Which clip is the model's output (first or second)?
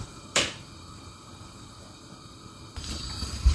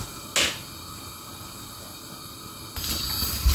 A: first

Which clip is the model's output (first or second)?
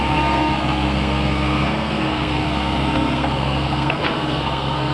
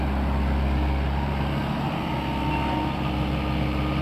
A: first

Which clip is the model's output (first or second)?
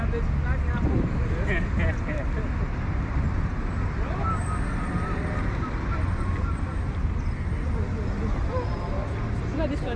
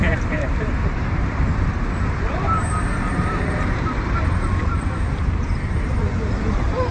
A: second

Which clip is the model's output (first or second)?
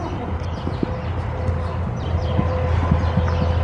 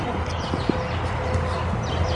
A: first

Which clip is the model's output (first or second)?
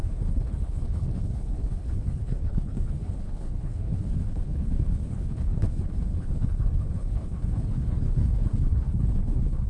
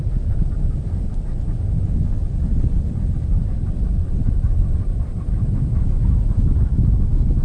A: first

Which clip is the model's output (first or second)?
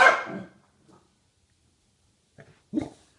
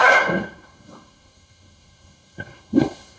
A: second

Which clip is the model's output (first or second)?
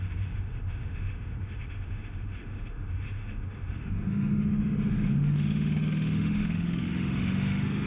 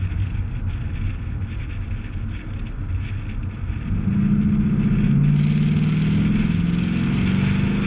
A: first